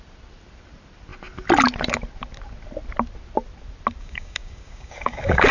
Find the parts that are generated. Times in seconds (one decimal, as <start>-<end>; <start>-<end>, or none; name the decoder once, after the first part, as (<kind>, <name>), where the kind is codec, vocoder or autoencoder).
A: 4.0-5.5 (codec, DAC)